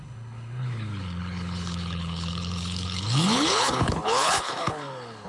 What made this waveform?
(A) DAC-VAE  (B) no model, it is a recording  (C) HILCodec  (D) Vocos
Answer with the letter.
C